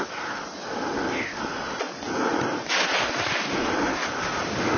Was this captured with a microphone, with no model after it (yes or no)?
yes